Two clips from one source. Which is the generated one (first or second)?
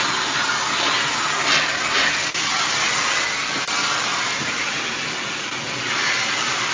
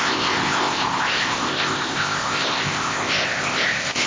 second